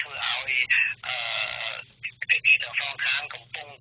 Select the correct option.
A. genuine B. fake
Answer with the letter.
A